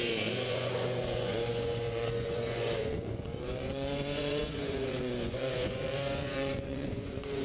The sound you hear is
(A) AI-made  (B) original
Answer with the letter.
A